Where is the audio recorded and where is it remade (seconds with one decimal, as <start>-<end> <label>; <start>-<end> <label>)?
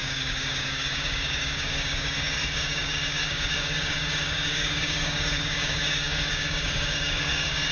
0.0-7.7 remade